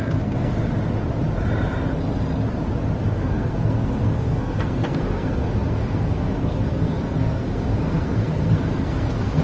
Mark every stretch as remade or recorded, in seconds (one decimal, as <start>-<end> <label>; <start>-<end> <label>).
0.0-0.5 remade; 0.5-3.1 recorded; 3.1-9.4 remade